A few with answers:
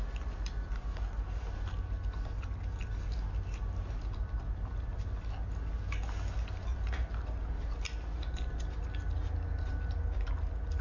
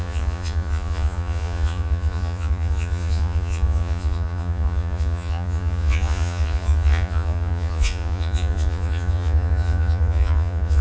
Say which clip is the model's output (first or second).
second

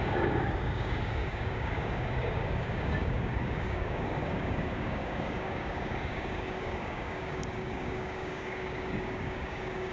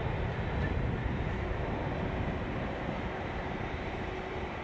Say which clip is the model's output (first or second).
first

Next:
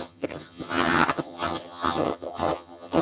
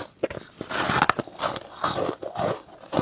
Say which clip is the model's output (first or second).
first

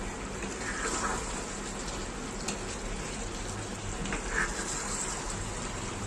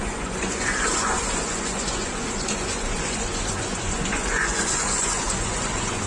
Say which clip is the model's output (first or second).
second